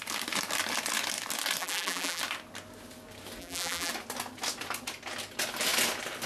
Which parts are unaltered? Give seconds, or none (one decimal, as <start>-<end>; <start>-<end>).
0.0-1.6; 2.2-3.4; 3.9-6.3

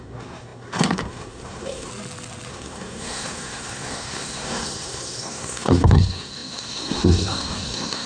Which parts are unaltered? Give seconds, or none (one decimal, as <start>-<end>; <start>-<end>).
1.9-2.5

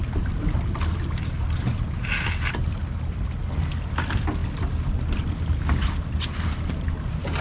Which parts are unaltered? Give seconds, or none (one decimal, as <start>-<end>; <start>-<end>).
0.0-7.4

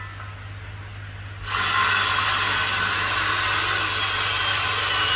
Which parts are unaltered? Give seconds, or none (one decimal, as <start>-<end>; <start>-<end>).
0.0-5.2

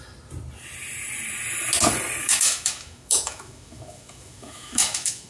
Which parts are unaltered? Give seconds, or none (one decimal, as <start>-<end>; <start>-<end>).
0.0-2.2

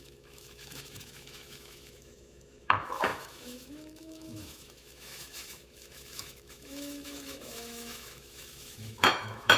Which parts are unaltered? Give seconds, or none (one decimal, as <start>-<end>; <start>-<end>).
none